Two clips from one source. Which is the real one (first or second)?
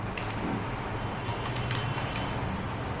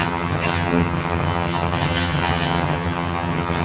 first